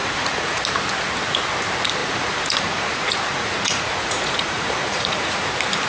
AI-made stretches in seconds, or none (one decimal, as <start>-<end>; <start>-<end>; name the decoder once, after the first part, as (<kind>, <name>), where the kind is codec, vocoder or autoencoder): 0.0-0.6 (vocoder, Vocos); 2.0-5.5

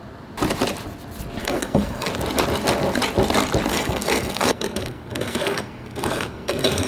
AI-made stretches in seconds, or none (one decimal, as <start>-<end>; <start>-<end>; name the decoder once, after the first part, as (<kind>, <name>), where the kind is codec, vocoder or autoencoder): 1.4-2.1 (codec, SNAC); 3.7-6.9

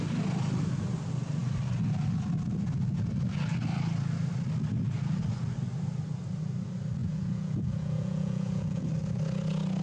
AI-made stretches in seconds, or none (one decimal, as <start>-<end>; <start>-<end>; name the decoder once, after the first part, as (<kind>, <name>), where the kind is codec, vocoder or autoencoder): 7.0-8.9 (vocoder, Vocos)

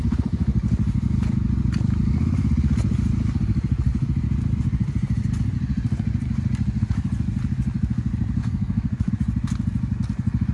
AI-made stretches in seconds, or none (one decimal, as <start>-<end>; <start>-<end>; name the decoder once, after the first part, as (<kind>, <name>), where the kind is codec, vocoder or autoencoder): 8.4-9.1 (codec, SNAC)

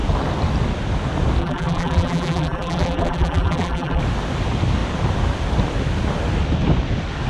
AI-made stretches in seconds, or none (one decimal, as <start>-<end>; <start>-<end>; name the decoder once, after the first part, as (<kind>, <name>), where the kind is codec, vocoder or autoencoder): 1.4-4.0 (vocoder, BigVGAN v2)

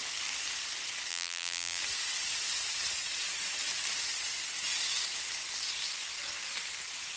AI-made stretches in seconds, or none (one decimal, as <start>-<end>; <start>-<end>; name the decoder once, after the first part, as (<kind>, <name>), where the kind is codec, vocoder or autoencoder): 1.1-1.8 (vocoder, BigVGAN v2)

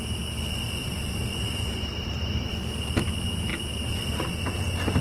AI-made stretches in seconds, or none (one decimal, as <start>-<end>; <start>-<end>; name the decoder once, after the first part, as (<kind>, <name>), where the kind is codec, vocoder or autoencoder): 1.3-2.5 (vocoder, BigVGAN v2)